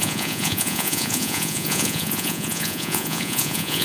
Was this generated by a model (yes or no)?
yes